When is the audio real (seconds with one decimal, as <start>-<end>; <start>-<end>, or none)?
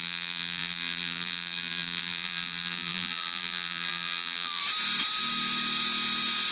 4.6-6.5